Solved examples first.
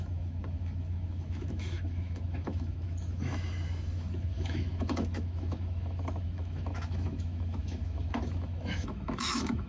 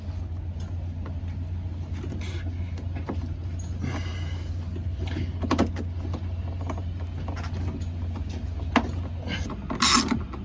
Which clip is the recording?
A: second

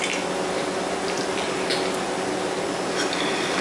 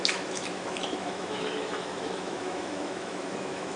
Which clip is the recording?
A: first